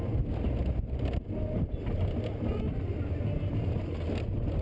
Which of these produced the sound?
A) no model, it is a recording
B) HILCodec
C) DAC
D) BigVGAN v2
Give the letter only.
A